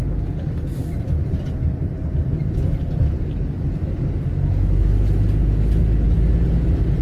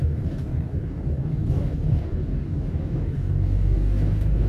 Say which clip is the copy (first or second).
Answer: second